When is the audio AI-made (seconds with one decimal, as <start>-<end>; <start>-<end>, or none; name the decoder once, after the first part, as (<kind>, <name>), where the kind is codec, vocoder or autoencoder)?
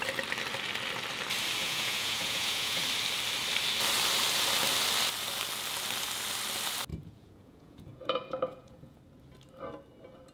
1.6-2.8 (vocoder, Vocos); 6.9-9.0